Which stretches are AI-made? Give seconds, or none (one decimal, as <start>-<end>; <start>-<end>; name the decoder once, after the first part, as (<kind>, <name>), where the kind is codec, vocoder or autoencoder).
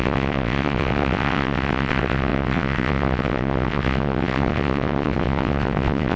0.0-6.2 (vocoder, WaveNeXt)